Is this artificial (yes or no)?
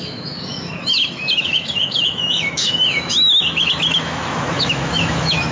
yes